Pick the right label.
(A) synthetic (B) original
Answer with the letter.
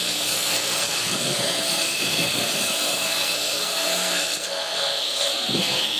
A